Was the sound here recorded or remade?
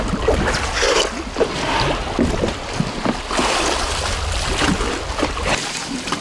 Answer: recorded